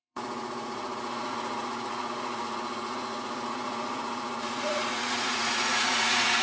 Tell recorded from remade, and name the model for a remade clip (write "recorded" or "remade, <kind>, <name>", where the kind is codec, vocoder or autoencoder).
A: remade, vocoder, Vocos